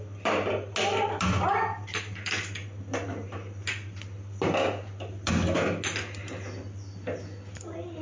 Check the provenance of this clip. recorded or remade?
recorded